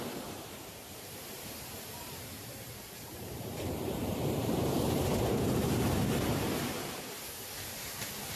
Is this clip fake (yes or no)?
yes